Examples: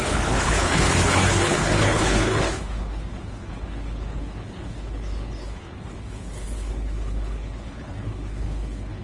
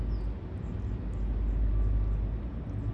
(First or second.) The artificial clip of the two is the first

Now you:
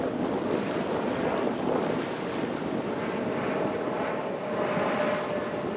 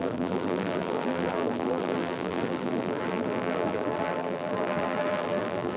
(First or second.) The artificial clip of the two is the second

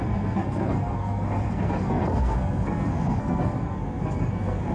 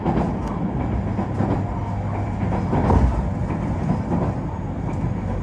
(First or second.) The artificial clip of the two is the first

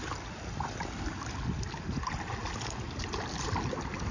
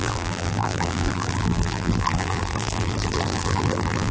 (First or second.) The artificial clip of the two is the second